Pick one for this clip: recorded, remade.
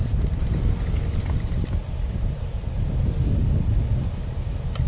recorded